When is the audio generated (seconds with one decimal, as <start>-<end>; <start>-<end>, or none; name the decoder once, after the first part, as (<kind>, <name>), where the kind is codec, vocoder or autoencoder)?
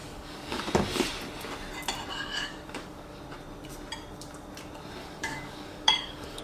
0.0-0.6 (codec, DAC); 2.1-3.2; 5.0-6.4